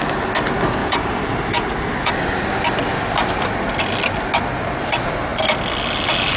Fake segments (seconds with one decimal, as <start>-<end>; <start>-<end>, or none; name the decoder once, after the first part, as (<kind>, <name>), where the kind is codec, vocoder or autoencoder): 0.8-2.1 (vocoder, BigVGAN v2)